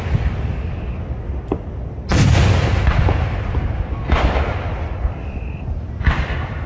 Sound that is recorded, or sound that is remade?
recorded